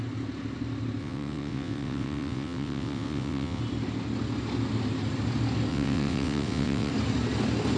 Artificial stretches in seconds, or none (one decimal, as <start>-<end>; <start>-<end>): 1.0-3.6; 5.7-6.9